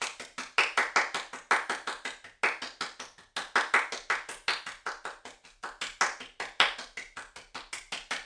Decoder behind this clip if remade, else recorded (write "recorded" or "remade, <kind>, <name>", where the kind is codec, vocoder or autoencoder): recorded